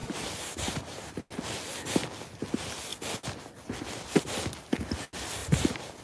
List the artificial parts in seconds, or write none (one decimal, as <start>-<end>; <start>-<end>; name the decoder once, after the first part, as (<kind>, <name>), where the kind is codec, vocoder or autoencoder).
0.0-1.2 (vocoder, BigVGAN v2); 5.4-6.0